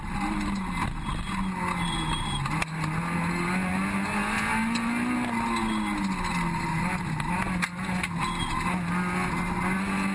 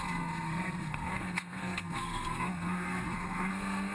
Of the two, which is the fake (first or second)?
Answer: second